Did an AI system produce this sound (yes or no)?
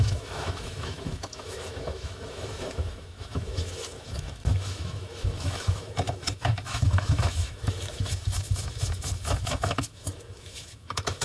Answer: yes